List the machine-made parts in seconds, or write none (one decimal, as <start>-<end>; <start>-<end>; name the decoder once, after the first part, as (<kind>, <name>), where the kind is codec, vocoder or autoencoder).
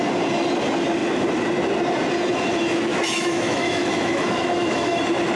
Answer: 2.9-5.0 (autoencoder, DAC-VAE)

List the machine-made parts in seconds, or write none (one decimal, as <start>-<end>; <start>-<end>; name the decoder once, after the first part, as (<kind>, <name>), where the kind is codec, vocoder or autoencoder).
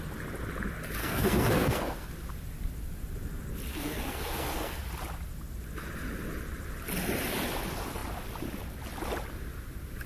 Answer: 1.0-2.1 (codec, SNAC); 3.7-4.8